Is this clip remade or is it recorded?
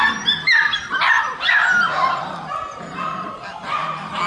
recorded